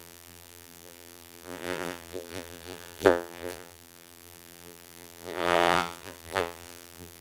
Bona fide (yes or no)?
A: no